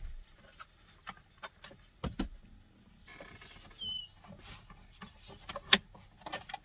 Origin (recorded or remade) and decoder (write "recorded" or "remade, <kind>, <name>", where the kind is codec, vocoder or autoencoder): recorded